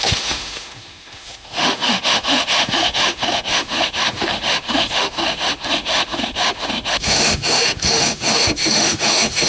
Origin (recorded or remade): remade